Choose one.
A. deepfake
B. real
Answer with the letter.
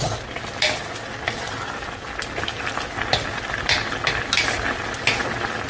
B